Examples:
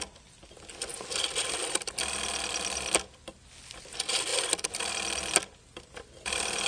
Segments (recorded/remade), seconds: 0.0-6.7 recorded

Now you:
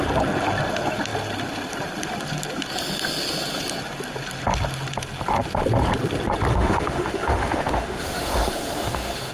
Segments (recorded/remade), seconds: 0.0-6.5 recorded; 6.5-9.3 remade

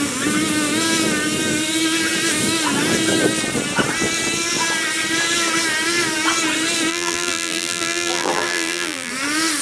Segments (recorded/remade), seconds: 0.0-6.9 recorded; 6.9-9.1 remade; 9.1-9.6 recorded

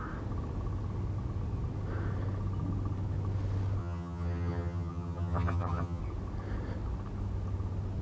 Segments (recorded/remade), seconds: 0.0-3.8 recorded; 3.8-6.0 remade; 6.0-8.0 recorded

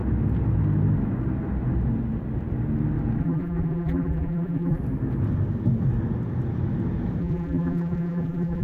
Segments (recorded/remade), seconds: 0.0-3.2 recorded; 3.2-4.8 remade; 4.8-7.2 recorded; 7.2-8.6 remade

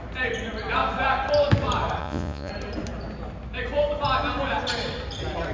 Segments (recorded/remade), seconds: 0.0-2.0 recorded; 2.0-2.5 remade; 2.5-5.5 recorded

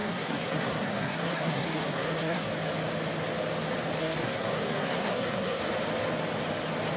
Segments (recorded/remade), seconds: 0.0-2.5 remade; 2.5-4.0 recorded; 4.0-5.6 remade; 5.6-7.0 recorded